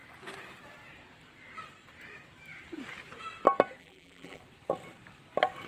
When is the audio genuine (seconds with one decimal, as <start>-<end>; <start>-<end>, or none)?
0.0-3.8; 4.4-5.7